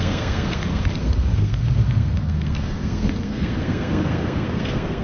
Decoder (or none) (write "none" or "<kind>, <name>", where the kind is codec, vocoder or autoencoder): codec, SNAC